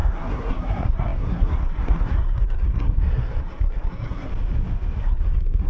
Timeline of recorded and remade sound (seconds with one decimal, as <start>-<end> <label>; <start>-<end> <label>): 0.0-4.3 remade; 4.3-5.0 recorded; 5.0-5.7 remade